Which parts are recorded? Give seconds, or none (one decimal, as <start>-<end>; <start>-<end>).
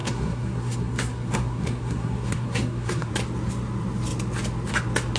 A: 3.1-5.2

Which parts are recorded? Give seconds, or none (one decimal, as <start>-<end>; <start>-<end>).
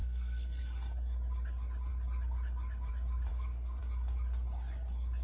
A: 0.6-3.3; 3.8-5.2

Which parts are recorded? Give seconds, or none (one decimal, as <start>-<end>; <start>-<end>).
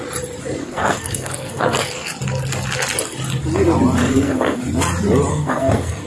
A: 0.0-0.6; 2.1-4.0; 4.6-5.3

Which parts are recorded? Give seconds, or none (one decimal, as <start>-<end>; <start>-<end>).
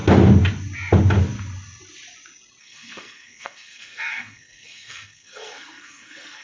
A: 0.0-2.6